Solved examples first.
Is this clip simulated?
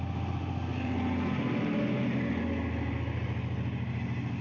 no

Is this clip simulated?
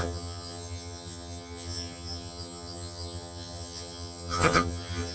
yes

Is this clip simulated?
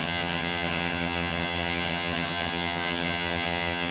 yes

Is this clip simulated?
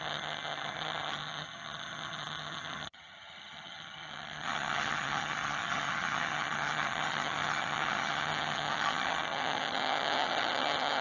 yes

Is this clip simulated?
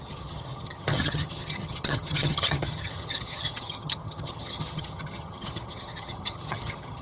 yes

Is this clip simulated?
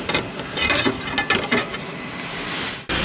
no